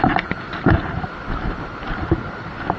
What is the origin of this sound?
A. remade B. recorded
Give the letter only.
B